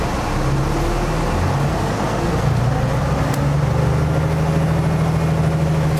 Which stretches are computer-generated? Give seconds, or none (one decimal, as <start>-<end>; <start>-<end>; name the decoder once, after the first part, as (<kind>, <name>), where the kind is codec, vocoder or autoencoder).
1.7-2.6 (codec, SNAC)